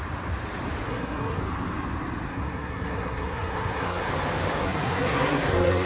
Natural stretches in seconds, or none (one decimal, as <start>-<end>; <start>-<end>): 0.0-0.9; 1.4-2.3; 4.1-4.6